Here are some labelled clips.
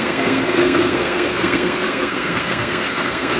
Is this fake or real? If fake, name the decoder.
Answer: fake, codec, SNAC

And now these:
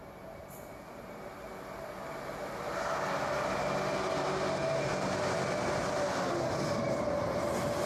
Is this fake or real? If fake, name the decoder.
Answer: real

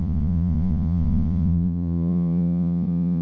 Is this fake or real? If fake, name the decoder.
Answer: fake, vocoder, Vocos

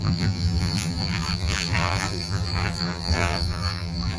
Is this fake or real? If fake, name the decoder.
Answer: fake, vocoder, BigVGAN v2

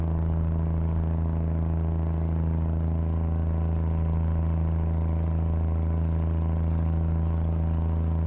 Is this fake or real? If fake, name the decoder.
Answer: real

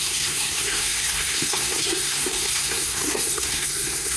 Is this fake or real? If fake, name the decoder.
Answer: fake, codec, SNAC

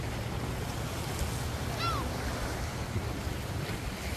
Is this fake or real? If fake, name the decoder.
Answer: real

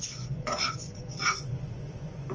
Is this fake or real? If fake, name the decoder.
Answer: fake, vocoder, Vocos